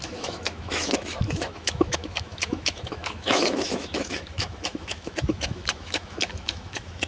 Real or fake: fake